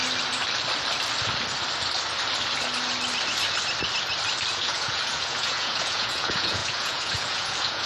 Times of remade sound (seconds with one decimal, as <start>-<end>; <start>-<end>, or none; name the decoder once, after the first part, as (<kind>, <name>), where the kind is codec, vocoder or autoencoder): 4.5-7.9 (vocoder, Vocos)